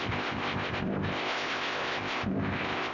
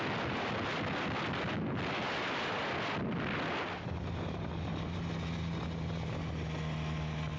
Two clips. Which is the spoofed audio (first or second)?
first